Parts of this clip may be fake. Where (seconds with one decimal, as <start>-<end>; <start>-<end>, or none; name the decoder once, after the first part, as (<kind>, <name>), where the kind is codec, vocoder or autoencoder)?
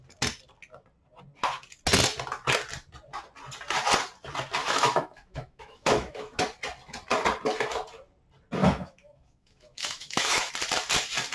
4.6-6.4 (autoencoder, DAC-VAE); 8.6-10.5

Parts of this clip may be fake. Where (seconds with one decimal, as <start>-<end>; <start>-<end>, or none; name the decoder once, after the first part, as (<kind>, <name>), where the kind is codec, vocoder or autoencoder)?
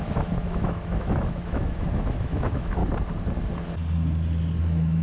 0.0-2.8 (autoencoder, DAC-VAE); 4.6-5.0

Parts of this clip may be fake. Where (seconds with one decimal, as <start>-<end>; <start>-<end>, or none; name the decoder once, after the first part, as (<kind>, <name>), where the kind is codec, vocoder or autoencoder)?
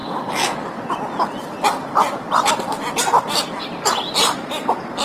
none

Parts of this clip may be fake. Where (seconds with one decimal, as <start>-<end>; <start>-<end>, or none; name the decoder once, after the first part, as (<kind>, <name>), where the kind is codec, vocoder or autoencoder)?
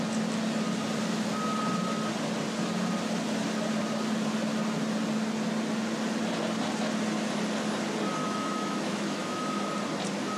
8.2-9.7 (autoencoder, DAC-VAE)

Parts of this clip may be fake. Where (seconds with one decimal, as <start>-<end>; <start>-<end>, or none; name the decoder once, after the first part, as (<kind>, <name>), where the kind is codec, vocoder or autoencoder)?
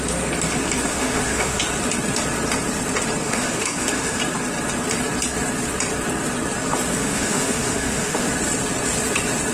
0.9-1.6 (autoencoder, DAC-VAE); 3.2-4.2; 7.0-8.3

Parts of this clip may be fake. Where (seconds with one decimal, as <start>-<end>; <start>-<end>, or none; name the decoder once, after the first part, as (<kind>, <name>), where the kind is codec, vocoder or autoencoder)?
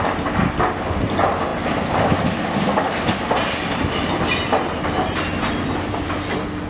none